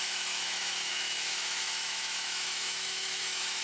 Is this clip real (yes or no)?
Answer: no